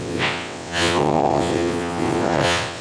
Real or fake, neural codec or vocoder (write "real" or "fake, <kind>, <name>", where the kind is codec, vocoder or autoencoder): fake, vocoder, WaveNeXt